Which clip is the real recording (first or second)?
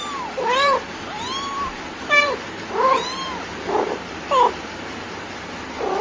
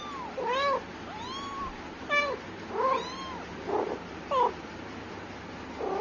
second